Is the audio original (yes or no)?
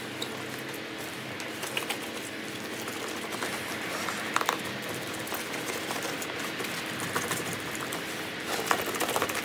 yes